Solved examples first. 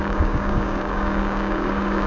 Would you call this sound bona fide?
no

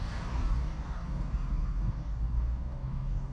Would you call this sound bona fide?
no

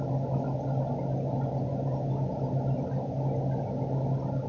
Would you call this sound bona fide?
yes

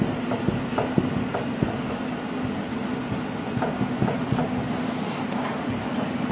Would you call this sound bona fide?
yes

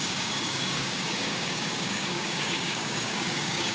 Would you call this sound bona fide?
no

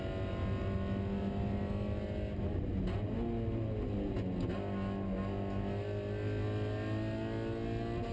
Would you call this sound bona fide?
yes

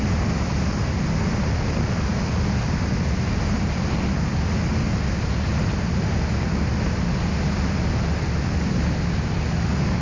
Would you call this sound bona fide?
yes